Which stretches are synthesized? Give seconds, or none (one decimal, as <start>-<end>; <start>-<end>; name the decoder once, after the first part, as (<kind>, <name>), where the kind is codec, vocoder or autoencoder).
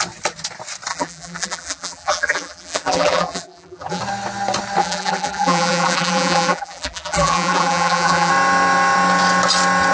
0.9-4.0 (vocoder, BigVGAN v2); 4.8-8.3